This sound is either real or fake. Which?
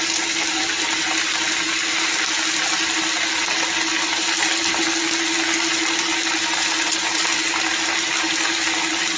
real